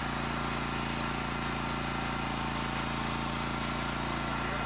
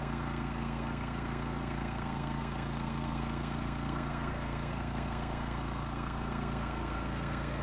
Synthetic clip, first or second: second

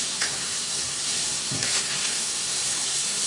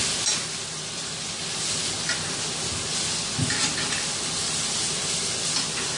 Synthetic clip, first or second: first